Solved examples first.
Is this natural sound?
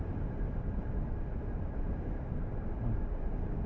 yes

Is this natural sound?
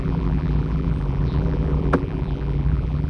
no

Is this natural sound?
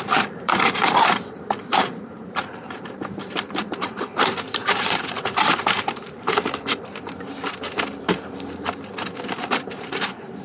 no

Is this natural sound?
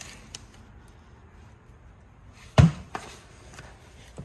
no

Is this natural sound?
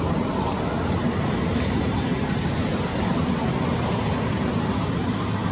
no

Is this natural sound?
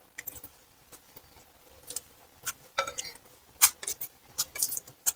no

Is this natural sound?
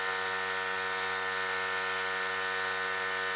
yes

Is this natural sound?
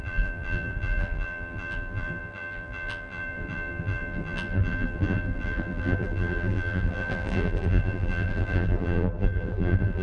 no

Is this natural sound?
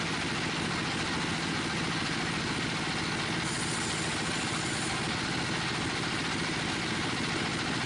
yes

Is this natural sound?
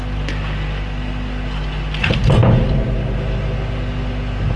yes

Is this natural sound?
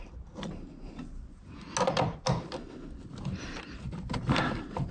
yes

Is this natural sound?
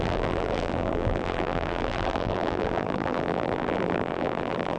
no